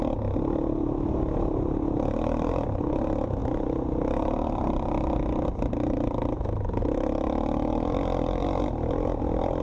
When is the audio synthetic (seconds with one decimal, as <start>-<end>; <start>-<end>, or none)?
none